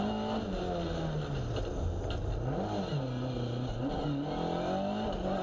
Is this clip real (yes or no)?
yes